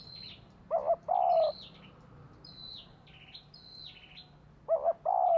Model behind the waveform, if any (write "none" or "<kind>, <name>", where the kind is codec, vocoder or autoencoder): none